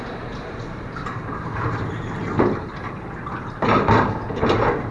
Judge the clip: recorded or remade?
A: remade